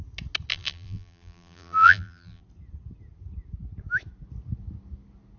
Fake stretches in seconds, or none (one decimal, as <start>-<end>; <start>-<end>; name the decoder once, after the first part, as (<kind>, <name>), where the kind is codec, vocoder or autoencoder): 0.5-2.4 (vocoder, BigVGAN v2)